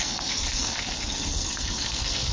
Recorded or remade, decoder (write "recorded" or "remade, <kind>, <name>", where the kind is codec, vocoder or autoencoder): remade, codec, SNAC